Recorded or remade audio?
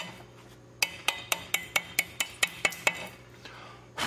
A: recorded